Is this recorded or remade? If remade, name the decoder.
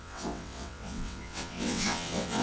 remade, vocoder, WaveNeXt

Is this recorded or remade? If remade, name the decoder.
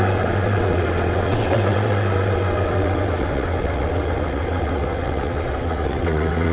remade, vocoder, WaveNeXt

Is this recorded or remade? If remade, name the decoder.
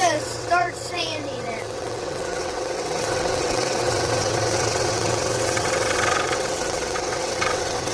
remade, vocoder, WaveNeXt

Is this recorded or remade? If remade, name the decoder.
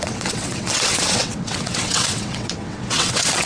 remade, vocoder, WaveNeXt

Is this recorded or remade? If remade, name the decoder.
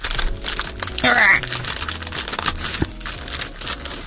recorded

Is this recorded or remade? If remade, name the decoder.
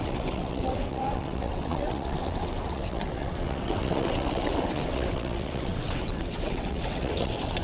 remade, vocoder, WaveNeXt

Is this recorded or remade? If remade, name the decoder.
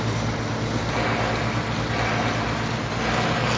recorded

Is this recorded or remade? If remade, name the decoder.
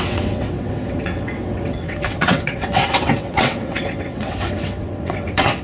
remade, vocoder, WaveNeXt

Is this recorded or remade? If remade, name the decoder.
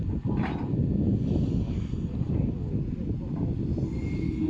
recorded